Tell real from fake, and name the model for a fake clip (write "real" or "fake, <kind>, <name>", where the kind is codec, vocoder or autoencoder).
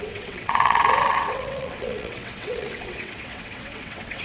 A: fake, vocoder, WaveNeXt